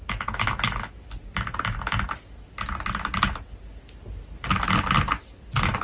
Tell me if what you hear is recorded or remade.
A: recorded